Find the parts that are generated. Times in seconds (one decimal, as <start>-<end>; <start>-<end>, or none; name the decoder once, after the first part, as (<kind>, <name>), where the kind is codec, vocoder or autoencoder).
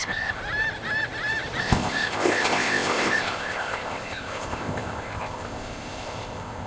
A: 0.0-0.4 (codec, ZipCodec); 1.6-6.7